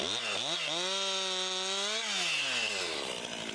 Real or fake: real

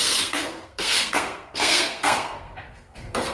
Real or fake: fake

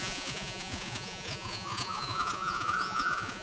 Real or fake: fake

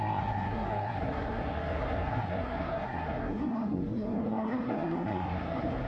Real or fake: fake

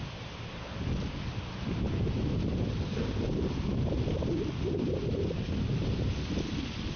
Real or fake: real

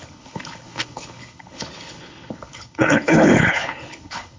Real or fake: fake